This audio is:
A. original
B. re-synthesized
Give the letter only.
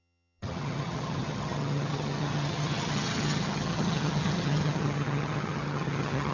B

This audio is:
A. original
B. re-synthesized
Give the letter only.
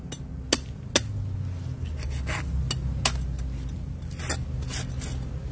A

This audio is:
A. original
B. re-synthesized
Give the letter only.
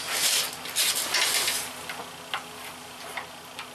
A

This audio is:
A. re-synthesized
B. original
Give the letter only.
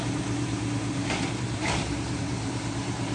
A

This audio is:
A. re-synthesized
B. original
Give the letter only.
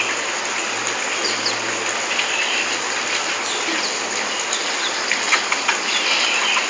B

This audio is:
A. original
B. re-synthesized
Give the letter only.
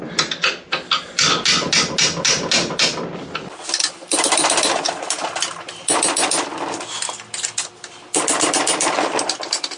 A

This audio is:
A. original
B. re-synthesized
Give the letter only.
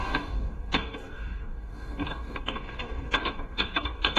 B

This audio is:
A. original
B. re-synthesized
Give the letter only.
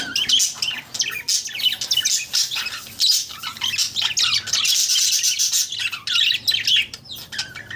A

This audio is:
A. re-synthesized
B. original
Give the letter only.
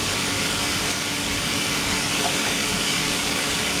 A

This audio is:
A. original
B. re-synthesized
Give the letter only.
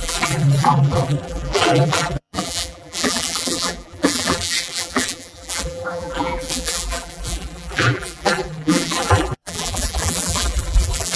B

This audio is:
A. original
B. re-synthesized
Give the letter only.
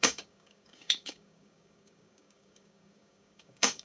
B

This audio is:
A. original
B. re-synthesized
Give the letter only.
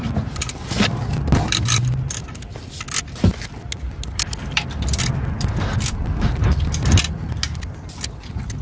A